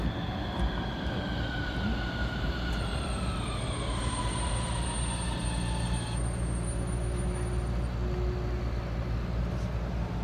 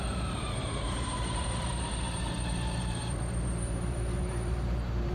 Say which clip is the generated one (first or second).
second